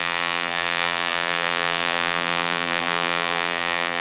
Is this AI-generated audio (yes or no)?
yes